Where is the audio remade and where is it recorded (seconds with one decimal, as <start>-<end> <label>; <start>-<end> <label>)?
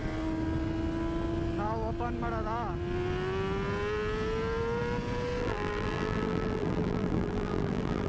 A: 0.0-5.4 recorded; 5.4-8.1 remade